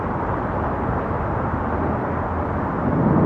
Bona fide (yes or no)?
yes